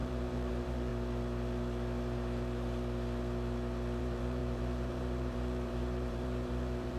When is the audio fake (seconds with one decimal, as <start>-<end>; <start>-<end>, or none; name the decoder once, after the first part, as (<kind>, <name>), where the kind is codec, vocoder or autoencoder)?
0.0-0.9 (vocoder, BigVGAN v2); 4.0-7.0